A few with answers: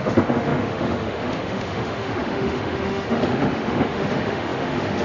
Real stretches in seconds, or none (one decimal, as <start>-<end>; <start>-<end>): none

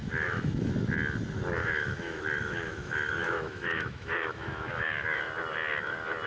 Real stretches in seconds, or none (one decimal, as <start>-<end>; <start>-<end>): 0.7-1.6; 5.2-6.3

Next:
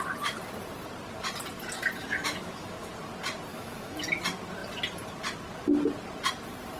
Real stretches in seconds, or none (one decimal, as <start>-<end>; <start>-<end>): 0.0-2.0; 2.9-3.5; 4.0-6.8

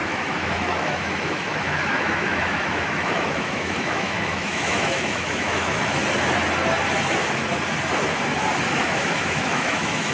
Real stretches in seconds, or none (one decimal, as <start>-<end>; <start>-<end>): 6.0-8.8

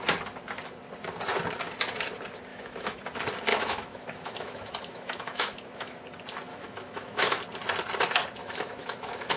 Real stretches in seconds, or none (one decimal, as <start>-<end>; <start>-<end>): 0.0-2.5; 3.0-3.5; 6.0-6.5; 7.4-8.4

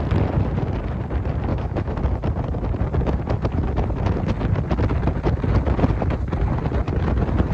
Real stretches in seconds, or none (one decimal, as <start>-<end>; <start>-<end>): 0.0-1.5; 2.0-7.5

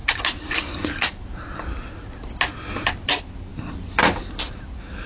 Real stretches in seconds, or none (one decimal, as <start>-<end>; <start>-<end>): 0.0-5.1

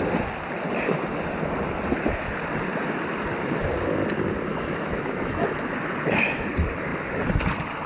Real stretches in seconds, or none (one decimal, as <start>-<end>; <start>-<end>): 0.0-4.5; 5.4-7.9